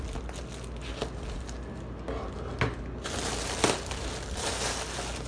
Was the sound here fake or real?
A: real